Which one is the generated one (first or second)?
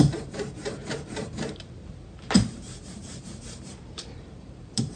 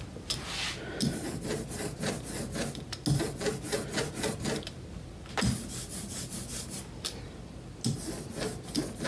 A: first